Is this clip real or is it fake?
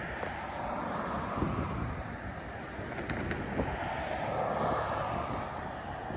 real